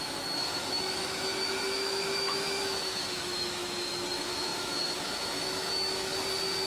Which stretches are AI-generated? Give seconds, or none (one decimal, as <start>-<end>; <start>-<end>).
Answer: 0.0-6.1